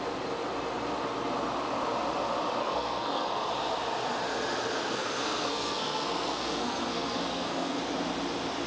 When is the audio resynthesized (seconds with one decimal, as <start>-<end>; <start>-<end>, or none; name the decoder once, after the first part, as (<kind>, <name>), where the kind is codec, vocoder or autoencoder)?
2.6-3.5 (codec, SNAC); 4.8-7.8